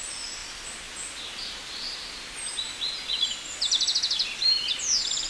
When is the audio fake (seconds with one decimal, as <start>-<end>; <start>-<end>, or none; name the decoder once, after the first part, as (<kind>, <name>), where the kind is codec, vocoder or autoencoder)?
none

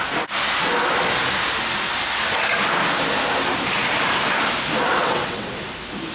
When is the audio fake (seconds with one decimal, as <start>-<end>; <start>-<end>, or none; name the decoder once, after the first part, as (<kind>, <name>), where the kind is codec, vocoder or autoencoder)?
5.0-5.5 (vocoder, WaveNeXt)